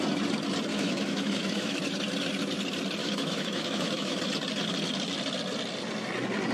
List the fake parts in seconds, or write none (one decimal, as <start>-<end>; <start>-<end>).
0.7-1.8; 3.0-4.2